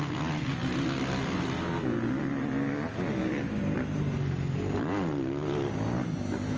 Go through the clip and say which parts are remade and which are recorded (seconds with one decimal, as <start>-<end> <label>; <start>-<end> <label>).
0.0-6.6 recorded